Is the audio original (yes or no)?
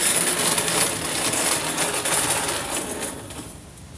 yes